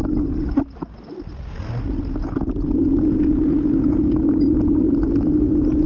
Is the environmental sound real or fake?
real